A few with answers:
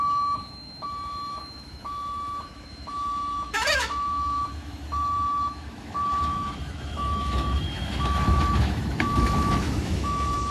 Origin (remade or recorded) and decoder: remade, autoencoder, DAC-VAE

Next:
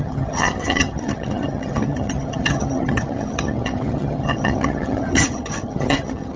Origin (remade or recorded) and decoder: remade, vocoder, HiFi-GAN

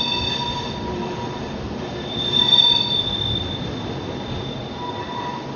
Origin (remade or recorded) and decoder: recorded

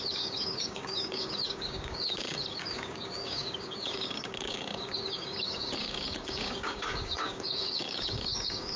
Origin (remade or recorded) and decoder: remade, codec, DAC